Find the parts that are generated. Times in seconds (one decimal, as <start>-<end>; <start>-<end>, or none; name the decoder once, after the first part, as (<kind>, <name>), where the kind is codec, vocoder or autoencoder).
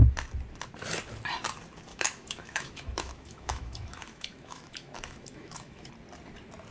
1.9-5.9 (autoencoder, DAC-VAE)